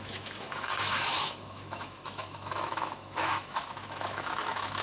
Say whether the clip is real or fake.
fake